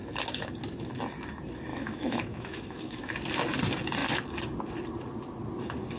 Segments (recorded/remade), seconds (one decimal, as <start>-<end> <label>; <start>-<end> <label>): 0.0-1.7 recorded; 1.7-3.0 remade; 3.0-6.0 recorded